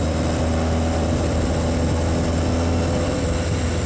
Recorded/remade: recorded